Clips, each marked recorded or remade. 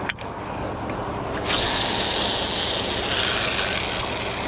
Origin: recorded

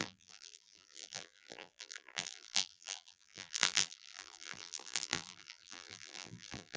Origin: remade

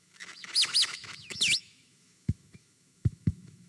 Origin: remade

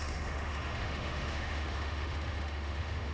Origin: remade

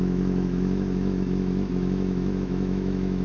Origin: remade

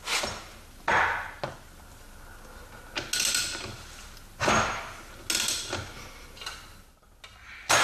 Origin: recorded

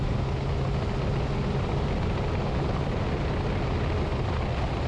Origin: recorded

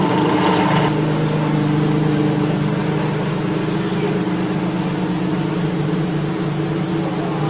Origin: recorded